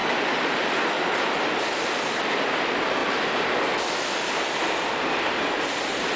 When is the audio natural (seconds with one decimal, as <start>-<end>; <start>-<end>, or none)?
0.0-6.2